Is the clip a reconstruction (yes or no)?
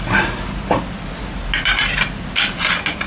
no